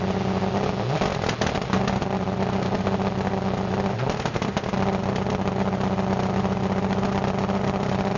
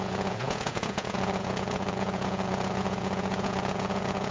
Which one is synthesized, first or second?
second